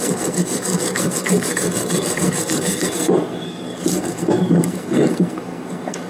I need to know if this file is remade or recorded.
remade